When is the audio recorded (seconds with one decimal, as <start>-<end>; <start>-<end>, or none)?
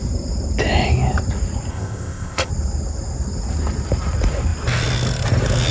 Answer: 0.0-1.7; 2.5-5.7